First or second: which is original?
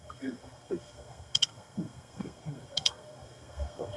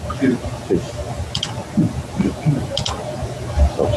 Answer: second